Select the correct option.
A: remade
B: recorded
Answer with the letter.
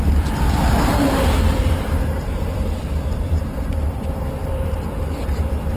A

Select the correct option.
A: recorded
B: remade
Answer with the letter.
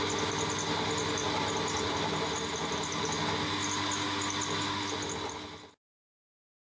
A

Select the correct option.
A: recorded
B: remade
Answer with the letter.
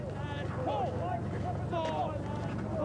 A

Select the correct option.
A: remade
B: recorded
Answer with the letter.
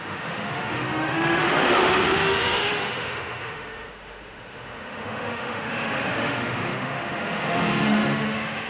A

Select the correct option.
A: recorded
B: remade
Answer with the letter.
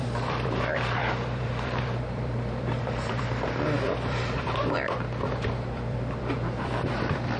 B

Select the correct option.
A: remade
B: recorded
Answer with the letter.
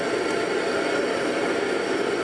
B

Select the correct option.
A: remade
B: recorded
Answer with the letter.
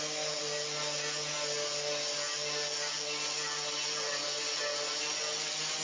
B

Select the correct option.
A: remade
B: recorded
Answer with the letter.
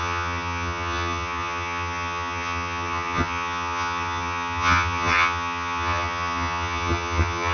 A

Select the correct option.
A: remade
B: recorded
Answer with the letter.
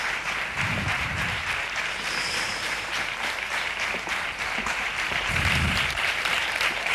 A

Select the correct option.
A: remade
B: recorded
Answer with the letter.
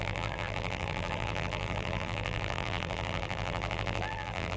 A